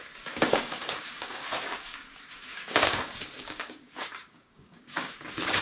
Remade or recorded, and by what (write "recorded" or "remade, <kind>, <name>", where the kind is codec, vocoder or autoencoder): remade, codec, DAC